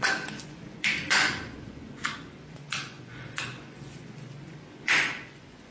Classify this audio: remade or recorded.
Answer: remade